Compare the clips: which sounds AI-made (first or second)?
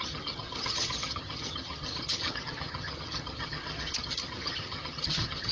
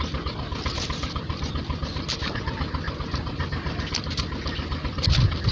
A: first